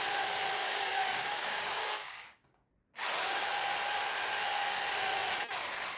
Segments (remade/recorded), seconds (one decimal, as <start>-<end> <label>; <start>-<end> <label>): 0.0-0.5 recorded; 0.5-2.7 remade; 2.7-6.0 recorded